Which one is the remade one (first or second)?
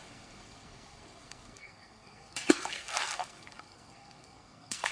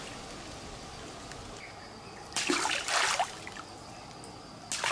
first